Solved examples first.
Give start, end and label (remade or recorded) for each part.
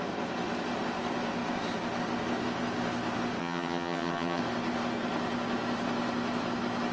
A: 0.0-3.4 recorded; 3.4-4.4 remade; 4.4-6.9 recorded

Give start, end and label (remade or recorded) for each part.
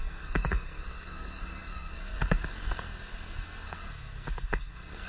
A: 0.0-5.1 remade